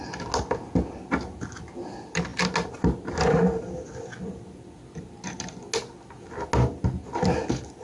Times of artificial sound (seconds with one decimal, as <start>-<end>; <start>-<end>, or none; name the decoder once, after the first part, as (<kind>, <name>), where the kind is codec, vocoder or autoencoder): none